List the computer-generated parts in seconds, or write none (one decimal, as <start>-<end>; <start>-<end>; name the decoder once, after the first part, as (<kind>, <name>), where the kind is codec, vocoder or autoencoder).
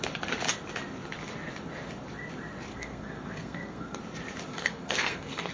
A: 2.7-4.0 (codec, SNAC); 4.5-5.5